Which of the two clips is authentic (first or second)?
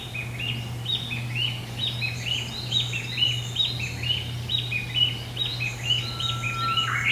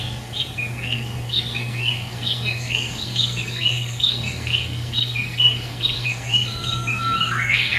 first